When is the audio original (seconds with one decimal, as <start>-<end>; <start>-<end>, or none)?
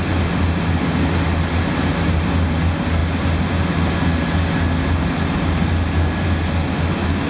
0.0-7.3